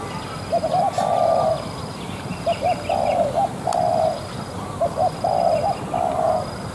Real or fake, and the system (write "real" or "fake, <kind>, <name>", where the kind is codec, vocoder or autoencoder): fake, vocoder, BigVGAN v2